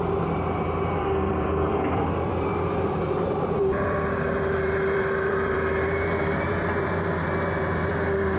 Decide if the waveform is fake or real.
fake